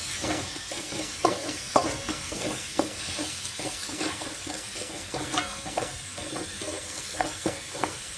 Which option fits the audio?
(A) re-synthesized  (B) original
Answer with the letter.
A